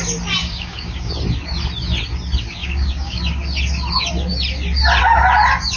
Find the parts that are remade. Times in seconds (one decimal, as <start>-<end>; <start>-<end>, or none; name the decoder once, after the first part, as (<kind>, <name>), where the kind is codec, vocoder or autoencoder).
0.4-1.1 (codec, DAC); 2.6-3.2